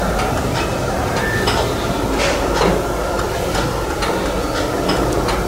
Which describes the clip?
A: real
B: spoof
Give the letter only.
A